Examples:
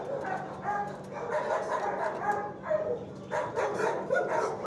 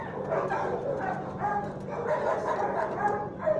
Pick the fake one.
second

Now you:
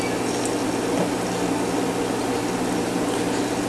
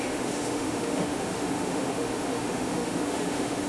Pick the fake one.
second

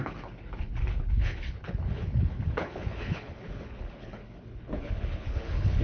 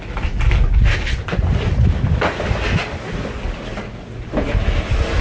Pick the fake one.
first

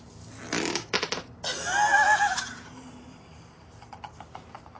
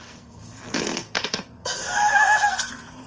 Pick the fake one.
second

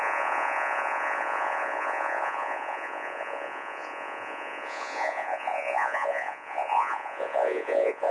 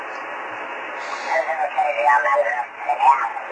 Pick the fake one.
first